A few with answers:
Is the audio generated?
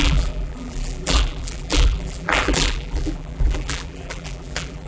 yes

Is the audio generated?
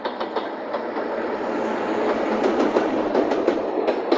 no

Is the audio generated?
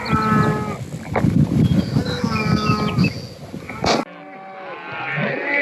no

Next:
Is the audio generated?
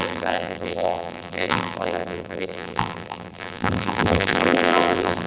yes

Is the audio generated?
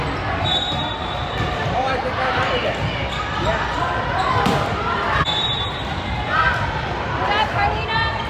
yes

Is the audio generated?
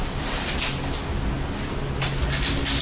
no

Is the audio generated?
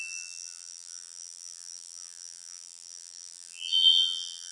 yes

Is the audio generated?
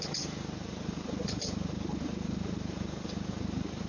yes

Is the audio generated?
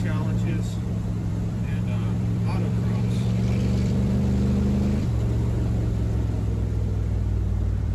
yes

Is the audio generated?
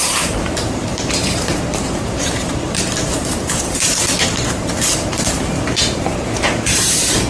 yes